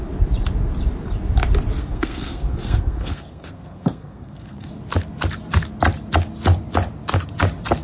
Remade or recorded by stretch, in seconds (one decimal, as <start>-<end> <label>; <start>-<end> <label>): 0.0-1.8 recorded; 1.8-4.7 remade; 4.7-7.8 recorded